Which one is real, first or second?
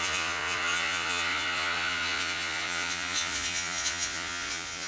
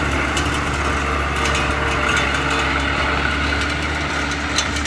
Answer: second